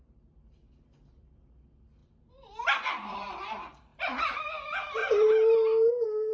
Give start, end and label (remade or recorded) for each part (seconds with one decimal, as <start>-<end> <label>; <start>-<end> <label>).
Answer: 0.0-2.0 recorded; 2.0-3.4 remade; 3.4-3.9 recorded; 3.9-4.5 remade; 4.5-5.0 recorded; 5.0-6.3 remade